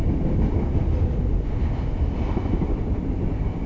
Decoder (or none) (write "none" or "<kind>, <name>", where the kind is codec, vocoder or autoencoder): none